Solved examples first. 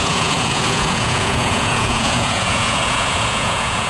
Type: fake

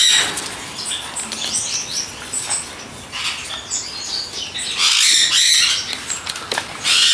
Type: real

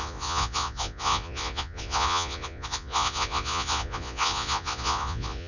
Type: fake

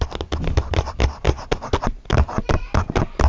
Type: real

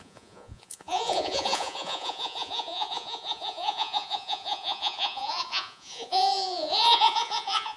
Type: fake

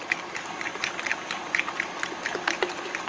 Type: real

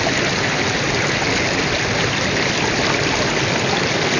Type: real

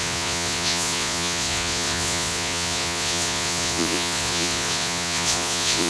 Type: fake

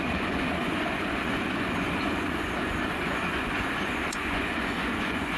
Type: fake